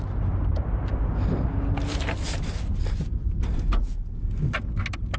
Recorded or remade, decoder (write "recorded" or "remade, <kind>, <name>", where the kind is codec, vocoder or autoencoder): recorded